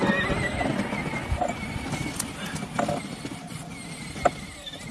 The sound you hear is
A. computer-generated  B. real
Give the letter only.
B